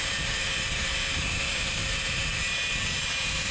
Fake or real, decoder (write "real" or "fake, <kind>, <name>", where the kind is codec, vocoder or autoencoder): fake, vocoder, BigVGAN v2